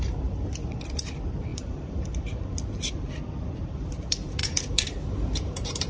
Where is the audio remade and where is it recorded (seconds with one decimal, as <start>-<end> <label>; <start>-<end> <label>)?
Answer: 0.0-1.5 recorded; 1.5-2.2 remade; 2.2-4.4 recorded; 4.4-5.9 remade